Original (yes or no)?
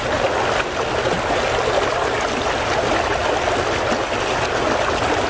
yes